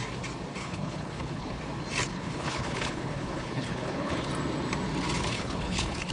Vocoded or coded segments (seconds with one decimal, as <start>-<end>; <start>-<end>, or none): 0.6-1.6; 2.1-4.3; 5.3-6.1